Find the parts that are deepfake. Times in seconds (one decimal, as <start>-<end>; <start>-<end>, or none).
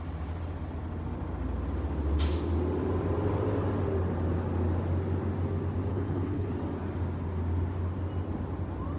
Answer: 5.9-6.5